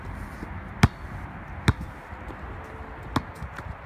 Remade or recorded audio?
recorded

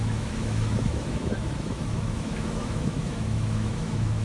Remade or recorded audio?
remade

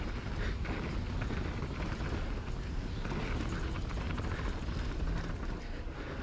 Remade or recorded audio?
recorded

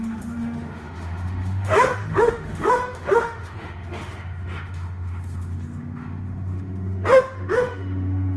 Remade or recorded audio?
remade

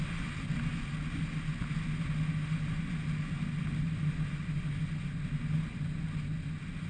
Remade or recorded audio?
recorded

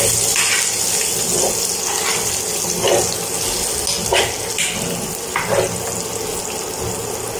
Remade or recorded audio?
recorded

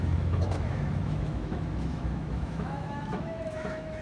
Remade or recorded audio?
remade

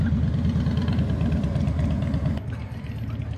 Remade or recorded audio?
recorded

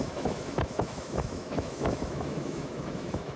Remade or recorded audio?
remade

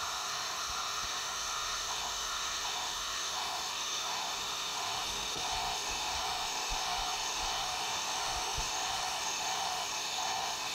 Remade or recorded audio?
remade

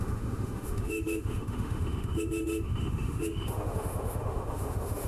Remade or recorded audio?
remade